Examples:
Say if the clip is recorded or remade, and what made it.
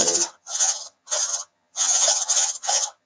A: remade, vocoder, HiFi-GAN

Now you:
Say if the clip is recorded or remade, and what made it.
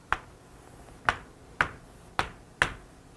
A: recorded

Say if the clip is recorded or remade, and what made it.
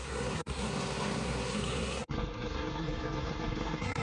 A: remade, codec, SNAC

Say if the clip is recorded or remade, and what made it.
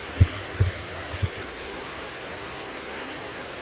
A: remade, codec, SNAC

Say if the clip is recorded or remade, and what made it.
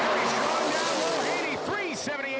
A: recorded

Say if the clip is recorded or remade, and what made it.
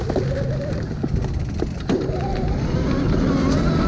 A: recorded